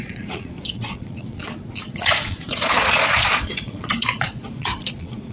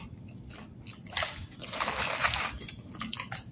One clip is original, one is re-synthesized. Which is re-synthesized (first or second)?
first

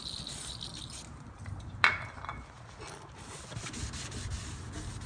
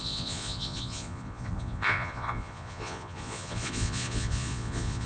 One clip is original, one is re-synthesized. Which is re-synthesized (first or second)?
second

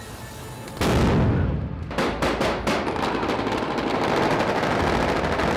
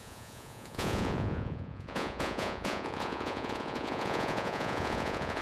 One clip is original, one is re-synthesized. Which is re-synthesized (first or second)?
second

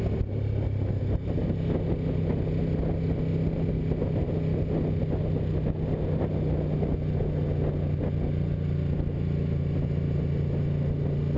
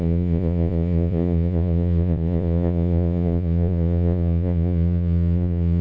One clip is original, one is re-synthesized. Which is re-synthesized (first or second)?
second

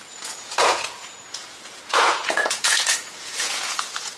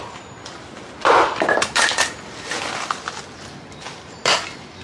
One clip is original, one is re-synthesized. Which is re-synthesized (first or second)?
first